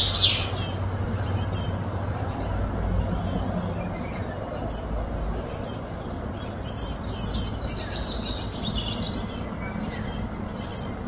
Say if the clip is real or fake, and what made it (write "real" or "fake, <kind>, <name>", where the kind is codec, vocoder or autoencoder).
real